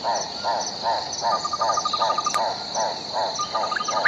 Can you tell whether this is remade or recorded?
recorded